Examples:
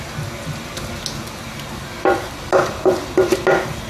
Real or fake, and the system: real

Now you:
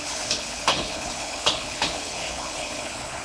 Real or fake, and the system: fake, codec, HILCodec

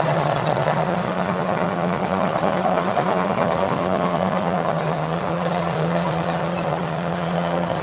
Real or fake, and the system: fake, vocoder, Vocos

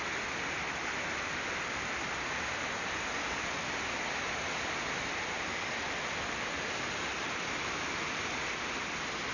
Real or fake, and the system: real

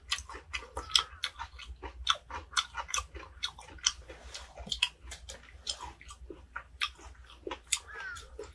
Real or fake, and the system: real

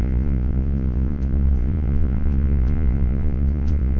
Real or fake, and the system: fake, vocoder, Vocos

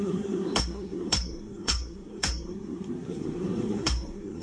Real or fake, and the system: fake, codec, SNAC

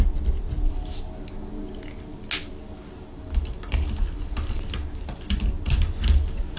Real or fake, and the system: real